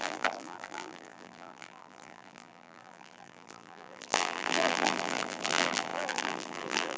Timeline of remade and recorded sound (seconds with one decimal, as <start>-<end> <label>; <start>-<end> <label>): 0.0-7.0 remade